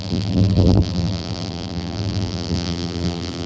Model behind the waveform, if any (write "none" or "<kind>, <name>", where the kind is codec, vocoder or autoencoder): vocoder, BigVGAN v2